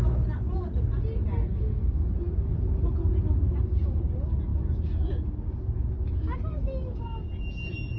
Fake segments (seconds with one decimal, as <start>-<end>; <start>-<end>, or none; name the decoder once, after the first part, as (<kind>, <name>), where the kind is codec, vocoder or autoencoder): 1.4-2.1 (codec, SNAC)